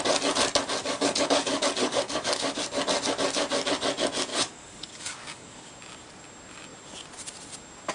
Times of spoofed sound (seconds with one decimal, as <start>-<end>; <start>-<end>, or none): 0.8-2.6; 4.3-5.7